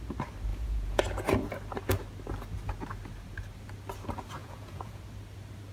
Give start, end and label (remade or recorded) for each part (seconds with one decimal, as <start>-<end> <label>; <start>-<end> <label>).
0.0-0.5 recorded; 0.5-1.0 remade; 1.0-4.4 recorded; 4.4-5.0 remade; 5.0-5.7 recorded